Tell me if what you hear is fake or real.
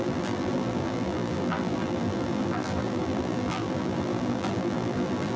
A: fake